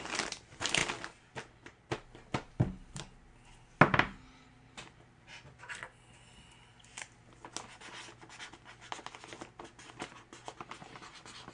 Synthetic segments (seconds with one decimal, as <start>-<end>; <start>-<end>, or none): none